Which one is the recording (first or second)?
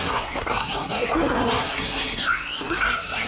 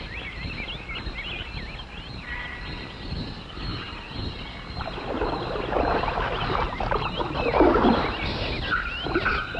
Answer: second